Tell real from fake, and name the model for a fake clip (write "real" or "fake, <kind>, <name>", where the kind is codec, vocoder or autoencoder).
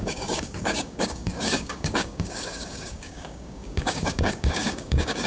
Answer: fake, codec, DAC